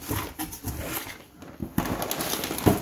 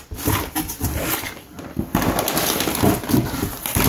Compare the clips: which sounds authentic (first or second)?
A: first